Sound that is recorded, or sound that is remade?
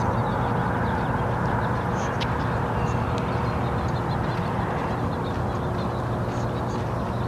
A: recorded